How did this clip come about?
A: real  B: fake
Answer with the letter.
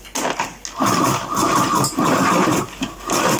A